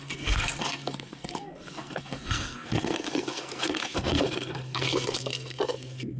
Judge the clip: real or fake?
fake